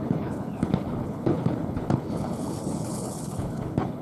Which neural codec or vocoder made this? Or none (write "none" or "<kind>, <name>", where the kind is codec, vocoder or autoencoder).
codec, HILCodec